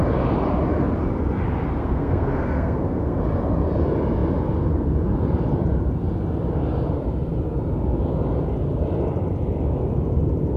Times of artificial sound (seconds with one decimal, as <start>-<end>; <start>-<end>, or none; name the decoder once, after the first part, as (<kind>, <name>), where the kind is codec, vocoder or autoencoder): 1.8-3.2 (codec, SNAC)